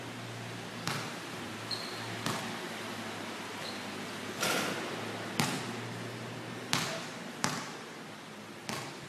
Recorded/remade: recorded